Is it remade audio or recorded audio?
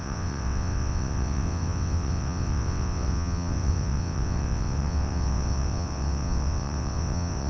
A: remade